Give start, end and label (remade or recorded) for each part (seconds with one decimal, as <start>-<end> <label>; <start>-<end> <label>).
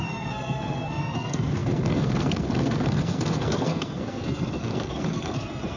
0.0-5.8 remade